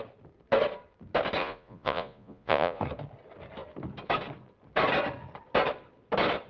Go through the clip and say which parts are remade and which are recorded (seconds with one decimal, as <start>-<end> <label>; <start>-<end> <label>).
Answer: 0.0-1.4 recorded; 1.4-2.8 remade; 2.8-6.5 recorded